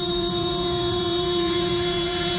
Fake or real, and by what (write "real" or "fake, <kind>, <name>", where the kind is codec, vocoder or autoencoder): fake, vocoder, Vocos